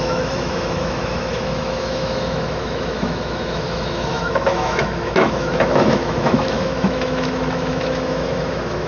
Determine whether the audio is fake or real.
fake